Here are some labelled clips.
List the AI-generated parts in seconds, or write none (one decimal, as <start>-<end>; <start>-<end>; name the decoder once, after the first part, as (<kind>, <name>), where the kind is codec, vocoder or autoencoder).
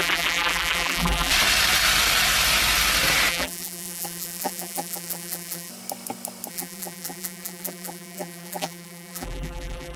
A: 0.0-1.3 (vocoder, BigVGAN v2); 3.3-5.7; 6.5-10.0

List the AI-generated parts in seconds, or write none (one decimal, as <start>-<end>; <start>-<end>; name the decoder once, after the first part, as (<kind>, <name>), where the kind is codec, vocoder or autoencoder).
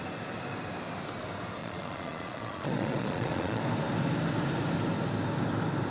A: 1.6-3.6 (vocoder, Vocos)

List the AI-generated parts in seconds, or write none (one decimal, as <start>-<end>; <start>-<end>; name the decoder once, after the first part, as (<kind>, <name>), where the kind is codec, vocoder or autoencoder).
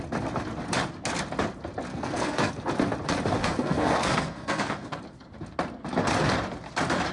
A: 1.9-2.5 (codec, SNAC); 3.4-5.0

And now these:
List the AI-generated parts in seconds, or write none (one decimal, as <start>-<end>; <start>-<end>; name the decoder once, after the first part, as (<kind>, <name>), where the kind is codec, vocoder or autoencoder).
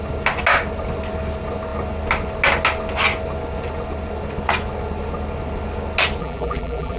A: 6.2-7.0 (vocoder, BigVGAN v2)